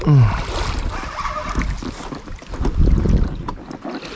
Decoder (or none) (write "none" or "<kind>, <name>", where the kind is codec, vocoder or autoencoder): none